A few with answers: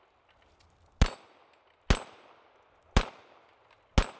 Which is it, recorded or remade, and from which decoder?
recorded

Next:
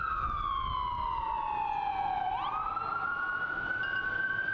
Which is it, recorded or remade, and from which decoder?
recorded